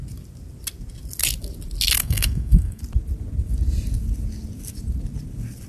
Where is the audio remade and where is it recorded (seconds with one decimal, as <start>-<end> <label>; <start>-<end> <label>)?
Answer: 0.0-2.0 recorded; 2.0-2.8 remade; 2.8-5.7 recorded